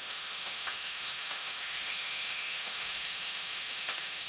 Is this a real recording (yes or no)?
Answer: no